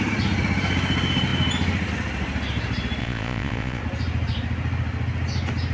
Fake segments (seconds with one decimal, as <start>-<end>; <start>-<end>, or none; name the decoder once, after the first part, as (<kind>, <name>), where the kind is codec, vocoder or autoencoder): 3.0-3.8 (vocoder, Vocos)

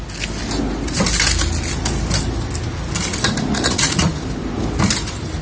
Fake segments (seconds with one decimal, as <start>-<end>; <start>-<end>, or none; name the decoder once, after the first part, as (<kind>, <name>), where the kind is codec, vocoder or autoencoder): 3.5-4.1 (vocoder, Vocos)

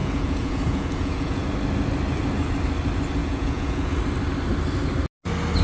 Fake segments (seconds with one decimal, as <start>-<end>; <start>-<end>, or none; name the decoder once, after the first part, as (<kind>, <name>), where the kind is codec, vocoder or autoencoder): 0.0-1.5 (vocoder, Vocos); 3.2-3.9